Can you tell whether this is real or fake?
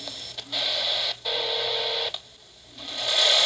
real